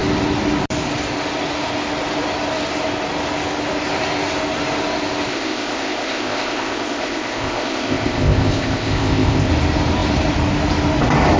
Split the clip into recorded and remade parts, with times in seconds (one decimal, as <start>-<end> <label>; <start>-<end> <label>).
0.0-5.3 recorded; 5.3-9.5 remade; 9.5-11.4 recorded